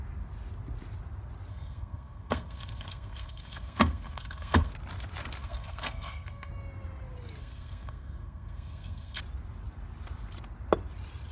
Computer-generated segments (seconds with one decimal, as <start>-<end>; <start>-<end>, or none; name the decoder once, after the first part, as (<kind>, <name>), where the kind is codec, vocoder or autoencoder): 1.5-4.7 (codec, SNAC); 5.4-6.5; 7.4-9.2